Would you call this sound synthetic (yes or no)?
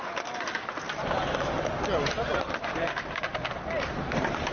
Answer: no